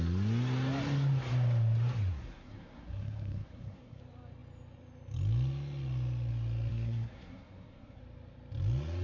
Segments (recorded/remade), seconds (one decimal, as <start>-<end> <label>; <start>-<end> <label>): 0.0-2.1 recorded; 2.1-4.0 remade; 4.0-6.7 recorded; 6.7-8.0 remade; 8.0-9.0 recorded

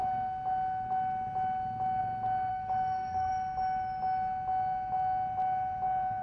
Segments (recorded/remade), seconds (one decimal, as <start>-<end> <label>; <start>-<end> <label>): 0.0-2.5 recorded; 2.5-3.3 remade; 3.3-6.2 recorded

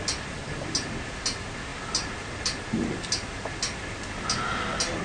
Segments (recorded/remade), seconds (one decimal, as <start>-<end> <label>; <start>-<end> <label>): 0.0-5.0 recorded

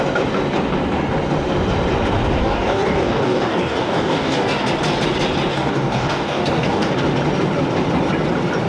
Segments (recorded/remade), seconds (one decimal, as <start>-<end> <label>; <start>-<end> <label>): 0.0-2.4 recorded; 2.4-4.7 remade; 4.7-5.5 recorded; 5.5-6.9 remade; 6.9-8.7 recorded

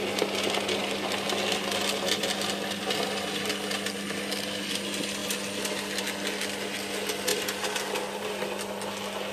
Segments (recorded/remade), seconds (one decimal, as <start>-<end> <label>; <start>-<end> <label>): 0.0-9.3 recorded

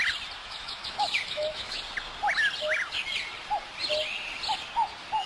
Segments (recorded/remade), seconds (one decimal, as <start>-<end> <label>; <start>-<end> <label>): 0.0-0.4 recorded; 0.4-1.8 remade; 1.8-5.3 recorded

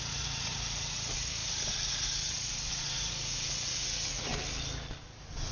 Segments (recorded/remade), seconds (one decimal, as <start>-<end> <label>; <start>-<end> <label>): 0.0-4.3 remade; 4.3-5.0 recorded; 5.0-5.5 remade